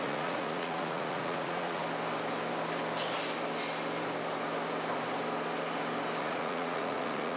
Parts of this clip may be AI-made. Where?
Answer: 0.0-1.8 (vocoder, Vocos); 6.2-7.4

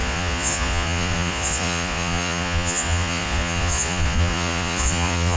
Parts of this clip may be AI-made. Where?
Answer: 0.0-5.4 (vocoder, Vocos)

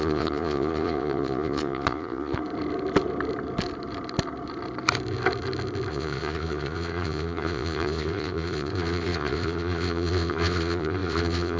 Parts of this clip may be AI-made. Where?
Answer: 0.0-2.4 (vocoder, Vocos); 5.9-11.6

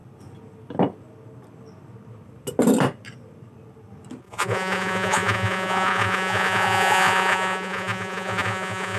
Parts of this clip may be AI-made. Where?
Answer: 4.2-9.0 (vocoder, Vocos)

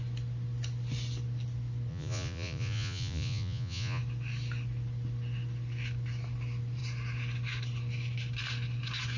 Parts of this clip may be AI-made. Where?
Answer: 1.9-4.0 (vocoder, Vocos)